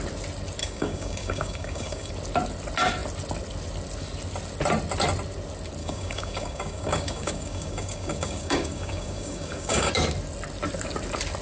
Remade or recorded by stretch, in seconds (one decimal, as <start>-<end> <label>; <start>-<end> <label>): 0.0-0.6 recorded; 0.6-2.1 remade; 2.1-5.8 recorded; 5.8-9.9 remade; 9.9-11.4 recorded